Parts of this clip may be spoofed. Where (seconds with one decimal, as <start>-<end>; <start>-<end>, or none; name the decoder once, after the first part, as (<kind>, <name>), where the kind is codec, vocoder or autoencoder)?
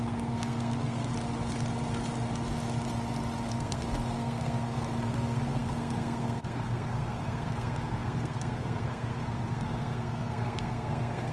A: 0.0-1.1 (codec, SNAC); 3.5-11.3